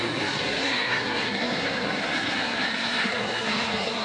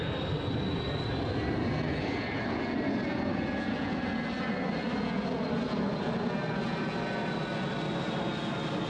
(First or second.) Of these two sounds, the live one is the second